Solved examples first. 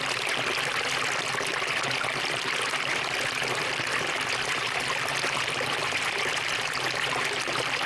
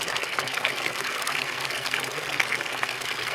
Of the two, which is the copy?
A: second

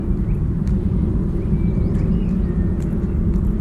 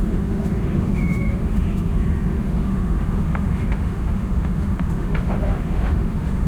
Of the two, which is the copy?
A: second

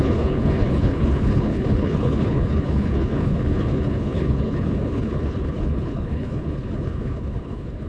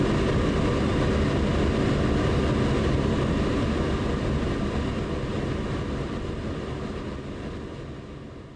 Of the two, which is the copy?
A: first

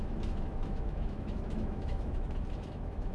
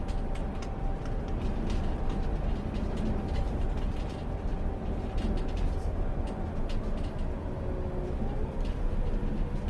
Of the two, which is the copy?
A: first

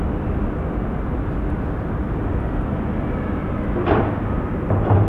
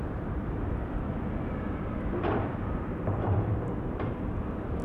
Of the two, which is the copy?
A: second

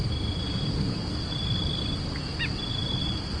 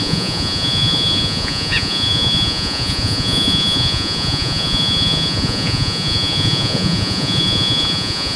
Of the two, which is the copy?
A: second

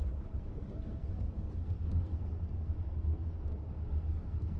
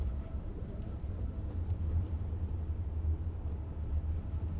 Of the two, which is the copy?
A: first